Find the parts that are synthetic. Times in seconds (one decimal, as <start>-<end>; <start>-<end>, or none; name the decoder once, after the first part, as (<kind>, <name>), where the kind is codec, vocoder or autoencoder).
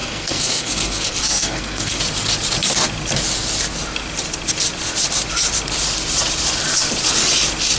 0.0-2.0 (codec, SNAC)